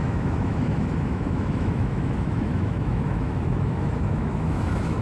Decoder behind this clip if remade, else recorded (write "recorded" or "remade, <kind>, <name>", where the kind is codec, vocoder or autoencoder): remade, autoencoder, DAC-VAE